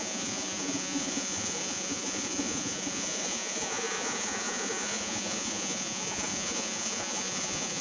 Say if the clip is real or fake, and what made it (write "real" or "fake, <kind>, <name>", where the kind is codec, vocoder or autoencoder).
fake, vocoder, Vocos